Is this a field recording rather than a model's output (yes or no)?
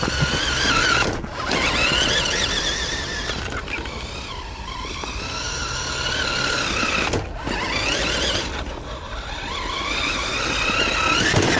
yes